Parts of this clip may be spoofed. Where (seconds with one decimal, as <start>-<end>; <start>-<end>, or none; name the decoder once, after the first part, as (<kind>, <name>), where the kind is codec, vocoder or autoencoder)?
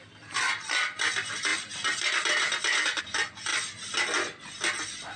none